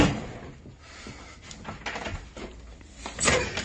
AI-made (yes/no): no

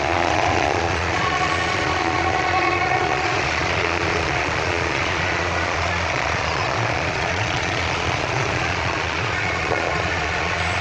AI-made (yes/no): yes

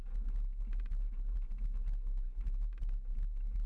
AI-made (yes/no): no